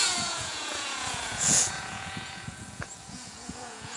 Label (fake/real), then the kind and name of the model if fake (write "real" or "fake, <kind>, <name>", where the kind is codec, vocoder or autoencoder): fake, vocoder, Vocos